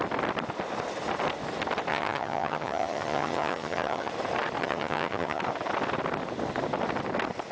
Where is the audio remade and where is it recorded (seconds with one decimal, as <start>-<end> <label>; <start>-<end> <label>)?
0.0-1.9 recorded; 1.9-4.1 remade; 4.1-4.6 recorded; 4.6-5.4 remade; 5.4-7.5 recorded